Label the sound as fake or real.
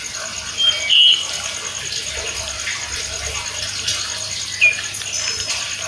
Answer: real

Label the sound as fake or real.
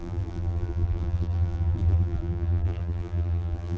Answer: fake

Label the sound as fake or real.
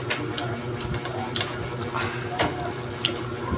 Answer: real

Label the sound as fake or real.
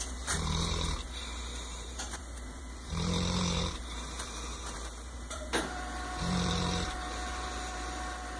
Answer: fake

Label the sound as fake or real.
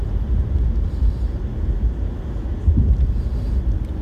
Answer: real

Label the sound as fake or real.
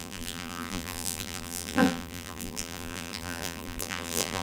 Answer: fake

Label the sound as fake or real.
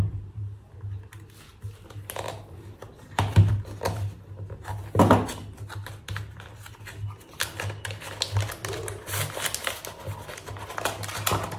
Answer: real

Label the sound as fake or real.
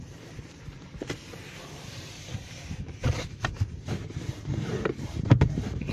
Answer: fake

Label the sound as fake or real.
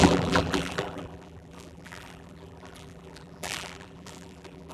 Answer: fake